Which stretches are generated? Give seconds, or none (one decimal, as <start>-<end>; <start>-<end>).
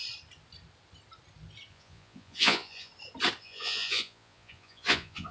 1.7-2.9; 3.4-5.3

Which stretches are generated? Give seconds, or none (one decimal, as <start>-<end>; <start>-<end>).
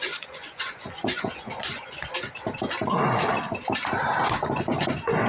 0.0-2.1